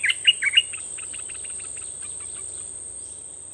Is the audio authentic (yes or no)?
yes